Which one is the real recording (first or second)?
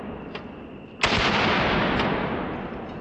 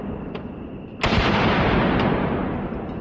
first